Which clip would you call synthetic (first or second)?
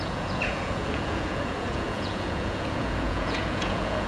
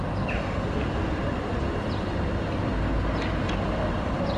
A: first